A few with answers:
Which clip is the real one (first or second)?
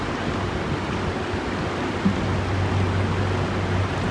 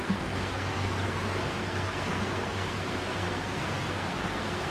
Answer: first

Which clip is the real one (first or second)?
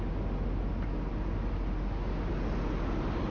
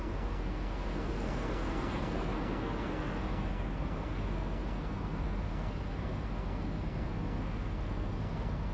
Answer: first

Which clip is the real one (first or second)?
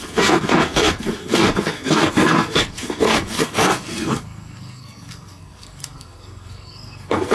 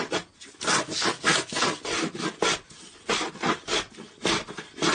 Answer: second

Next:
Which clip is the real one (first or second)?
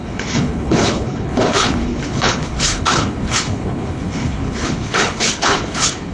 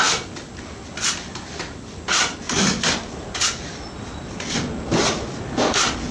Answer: second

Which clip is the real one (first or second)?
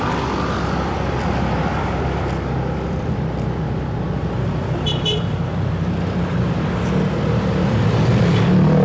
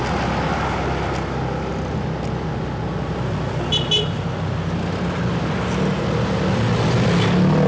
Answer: second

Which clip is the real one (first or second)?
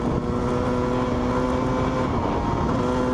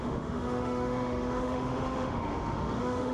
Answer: first